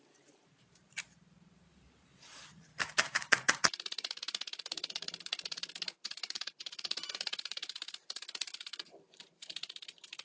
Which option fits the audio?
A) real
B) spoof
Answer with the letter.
B